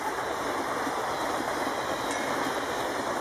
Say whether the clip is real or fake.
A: real